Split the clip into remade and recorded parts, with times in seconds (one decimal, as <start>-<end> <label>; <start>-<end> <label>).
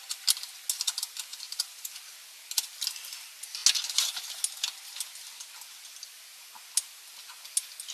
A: 0.0-1.3 recorded; 1.3-1.9 remade; 1.9-7.9 recorded